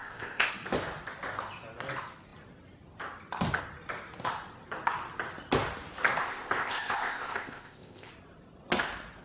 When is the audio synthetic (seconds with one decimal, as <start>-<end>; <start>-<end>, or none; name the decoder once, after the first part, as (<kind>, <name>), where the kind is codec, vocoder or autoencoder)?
0.0-0.5 (codec, ZipCodec); 6.2-8.1